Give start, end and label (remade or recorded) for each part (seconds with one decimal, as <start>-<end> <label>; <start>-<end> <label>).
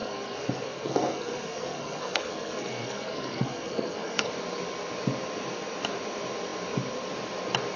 0.0-4.3 remade; 4.3-7.8 recorded